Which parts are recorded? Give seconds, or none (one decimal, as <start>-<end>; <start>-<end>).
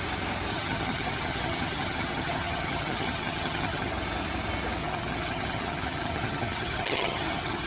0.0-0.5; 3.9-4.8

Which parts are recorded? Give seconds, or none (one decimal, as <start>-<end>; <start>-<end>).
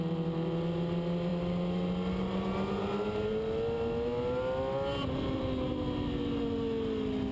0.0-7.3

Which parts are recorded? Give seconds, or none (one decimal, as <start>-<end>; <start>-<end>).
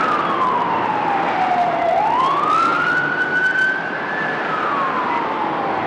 0.0-5.9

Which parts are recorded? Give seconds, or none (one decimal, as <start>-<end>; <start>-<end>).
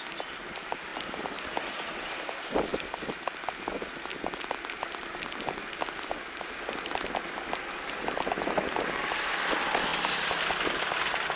0.0-11.4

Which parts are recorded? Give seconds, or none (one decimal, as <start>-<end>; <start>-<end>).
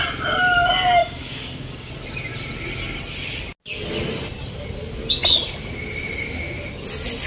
0.0-1.0; 1.9-7.3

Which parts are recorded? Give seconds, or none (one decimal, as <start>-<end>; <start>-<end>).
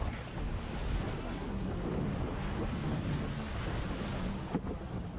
0.0-1.2; 1.7-5.2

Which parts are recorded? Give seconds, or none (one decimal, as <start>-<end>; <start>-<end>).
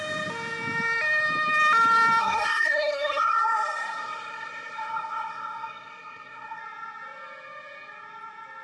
0.0-2.2; 6.6-8.6